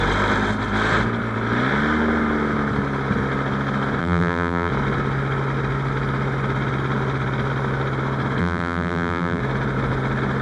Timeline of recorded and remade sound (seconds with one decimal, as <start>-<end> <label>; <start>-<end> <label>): 0.0-4.0 recorded; 4.0-4.7 remade; 4.7-8.4 recorded; 8.4-9.4 remade; 9.4-10.4 recorded